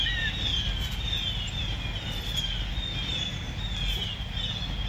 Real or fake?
real